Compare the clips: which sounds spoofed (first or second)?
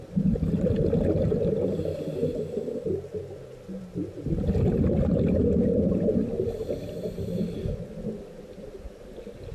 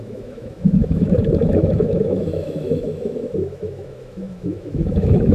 second